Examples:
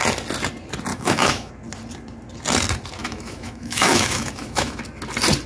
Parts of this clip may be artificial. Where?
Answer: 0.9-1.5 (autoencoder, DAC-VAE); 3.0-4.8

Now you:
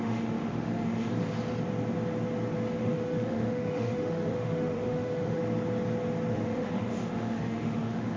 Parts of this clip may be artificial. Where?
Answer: 0.0-1.1 (autoencoder, DAC-VAE); 2.8-5.4; 6.3-8.2

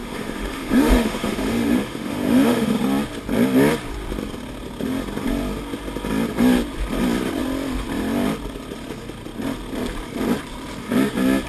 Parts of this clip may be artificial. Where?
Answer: 0.0-2.8 (autoencoder, DAC-VAE)